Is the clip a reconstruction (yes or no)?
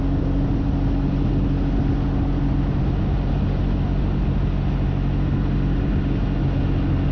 no